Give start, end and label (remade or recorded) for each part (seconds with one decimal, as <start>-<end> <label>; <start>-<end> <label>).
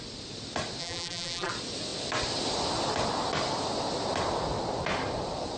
0.0-0.8 recorded; 0.8-1.5 remade; 1.5-5.6 recorded